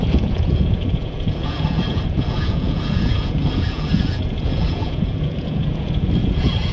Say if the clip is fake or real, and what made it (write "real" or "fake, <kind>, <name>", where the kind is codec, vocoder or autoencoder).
fake, vocoder, Vocos